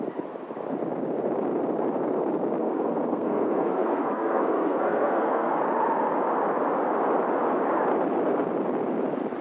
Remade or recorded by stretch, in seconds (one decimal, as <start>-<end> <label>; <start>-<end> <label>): 0.0-2.6 recorded; 2.6-5.6 remade; 5.6-9.4 recorded